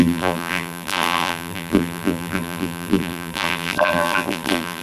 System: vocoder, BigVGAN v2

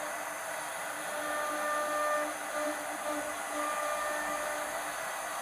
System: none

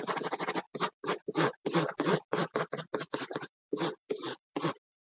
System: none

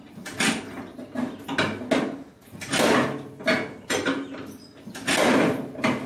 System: none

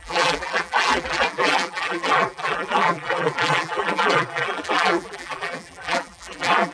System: vocoder, BigVGAN v2